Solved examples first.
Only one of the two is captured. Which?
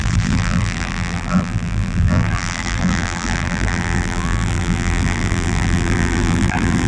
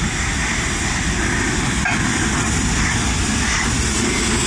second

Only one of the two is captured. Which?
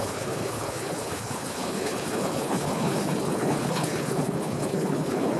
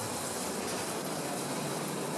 second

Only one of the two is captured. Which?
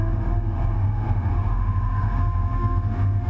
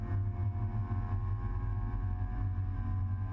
second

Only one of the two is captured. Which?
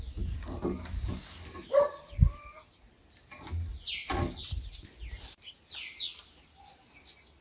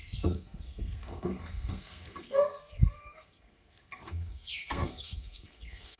first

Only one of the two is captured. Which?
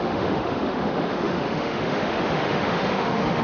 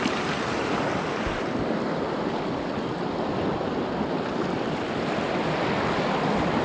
second